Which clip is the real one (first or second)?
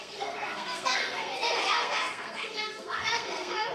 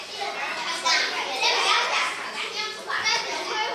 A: second